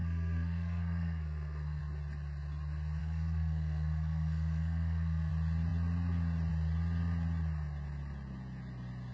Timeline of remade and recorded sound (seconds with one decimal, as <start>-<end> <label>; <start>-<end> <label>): 0.0-1.8 remade; 1.8-3.0 recorded; 3.0-5.3 remade; 5.3-9.1 recorded